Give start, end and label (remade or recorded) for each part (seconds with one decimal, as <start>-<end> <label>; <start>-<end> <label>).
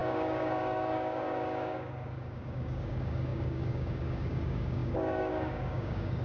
0.0-6.2 remade